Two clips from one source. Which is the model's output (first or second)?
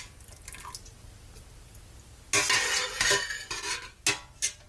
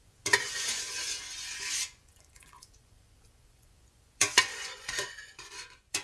second